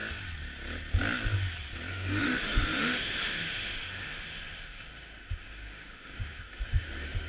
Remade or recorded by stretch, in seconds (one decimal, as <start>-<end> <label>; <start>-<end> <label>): 0.0-1.9 recorded; 1.9-7.3 remade